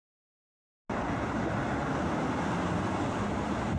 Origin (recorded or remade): recorded